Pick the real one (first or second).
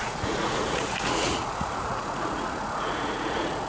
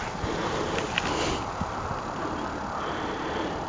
second